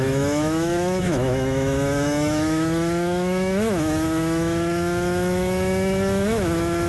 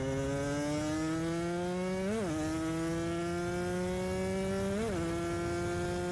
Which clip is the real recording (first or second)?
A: second